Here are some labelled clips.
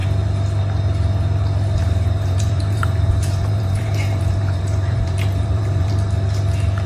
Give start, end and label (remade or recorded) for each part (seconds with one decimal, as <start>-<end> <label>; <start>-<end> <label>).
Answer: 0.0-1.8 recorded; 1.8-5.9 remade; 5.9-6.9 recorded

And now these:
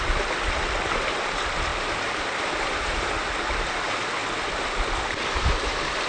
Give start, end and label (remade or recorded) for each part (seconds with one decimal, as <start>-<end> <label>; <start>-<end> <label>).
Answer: 0.0-1.7 recorded; 1.7-3.1 remade; 3.1-6.1 recorded

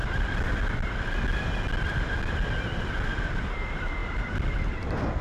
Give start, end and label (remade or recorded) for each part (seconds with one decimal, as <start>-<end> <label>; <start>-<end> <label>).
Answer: 0.0-0.6 remade; 0.6-4.0 recorded; 4.0-4.7 remade; 4.7-5.2 recorded

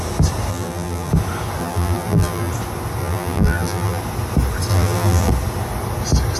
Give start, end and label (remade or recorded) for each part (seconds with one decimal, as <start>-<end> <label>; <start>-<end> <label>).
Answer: 0.0-0.5 recorded; 0.5-1.1 remade; 1.1-1.6 recorded; 1.6-2.5 remade; 2.5-3.0 recorded; 3.0-4.0 remade; 4.0-4.7 recorded; 4.7-5.3 remade; 5.3-6.4 recorded